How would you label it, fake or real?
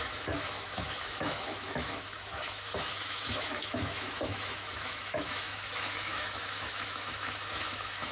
fake